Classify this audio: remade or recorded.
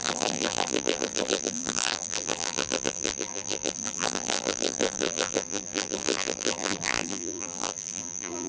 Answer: remade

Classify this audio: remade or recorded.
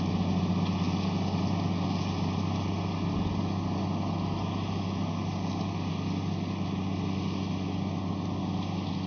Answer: recorded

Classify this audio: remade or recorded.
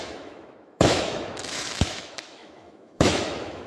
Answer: remade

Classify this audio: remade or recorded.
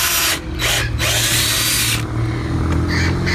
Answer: recorded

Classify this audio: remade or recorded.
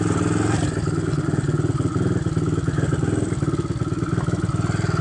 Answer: recorded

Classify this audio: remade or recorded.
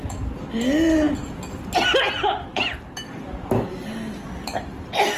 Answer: recorded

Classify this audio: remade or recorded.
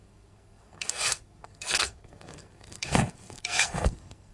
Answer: remade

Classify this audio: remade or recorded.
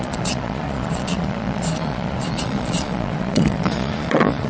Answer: remade